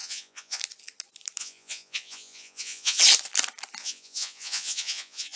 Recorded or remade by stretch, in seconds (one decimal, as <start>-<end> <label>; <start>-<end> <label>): 0.0-0.6 remade; 0.6-1.4 recorded; 1.4-3.0 remade; 3.0-3.8 recorded; 3.8-5.4 remade